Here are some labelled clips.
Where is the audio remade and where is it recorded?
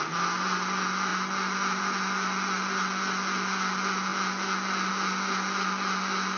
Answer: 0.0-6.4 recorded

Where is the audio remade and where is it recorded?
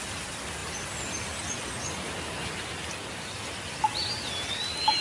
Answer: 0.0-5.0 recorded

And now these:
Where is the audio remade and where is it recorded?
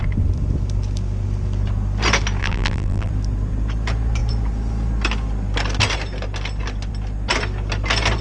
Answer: 0.0-2.4 recorded; 2.4-3.1 remade; 3.1-8.2 recorded